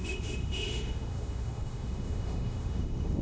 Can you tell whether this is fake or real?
fake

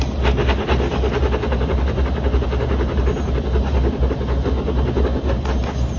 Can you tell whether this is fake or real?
real